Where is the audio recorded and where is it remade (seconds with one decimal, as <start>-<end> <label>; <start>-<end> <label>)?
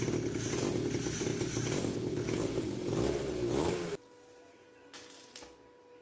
0.0-6.0 recorded